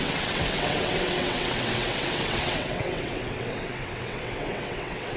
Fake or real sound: fake